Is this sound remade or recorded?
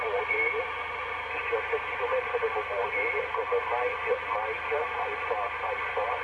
recorded